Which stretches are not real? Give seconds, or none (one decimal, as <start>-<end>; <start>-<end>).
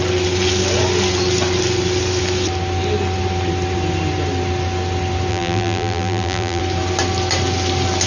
5.3-6.6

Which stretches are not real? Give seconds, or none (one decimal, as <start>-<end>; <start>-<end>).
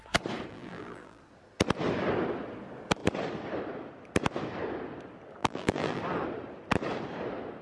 0.5-1.2; 5.4-6.0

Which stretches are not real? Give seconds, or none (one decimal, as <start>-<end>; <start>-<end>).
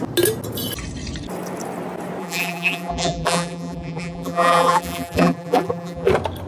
2.2-6.1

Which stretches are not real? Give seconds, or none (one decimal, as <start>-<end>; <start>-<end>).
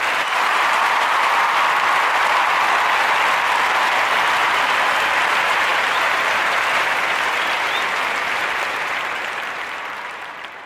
0.0-1.3; 3.8-10.7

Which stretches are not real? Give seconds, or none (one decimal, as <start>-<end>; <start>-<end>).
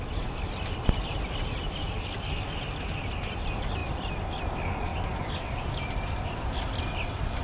4.9-6.6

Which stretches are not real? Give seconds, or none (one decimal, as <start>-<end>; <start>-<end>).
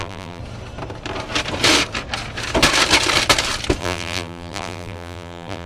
0.0-0.4; 3.8-5.7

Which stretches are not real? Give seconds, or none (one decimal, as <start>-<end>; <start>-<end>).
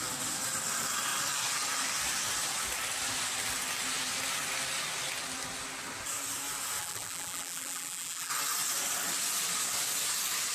6.8-8.3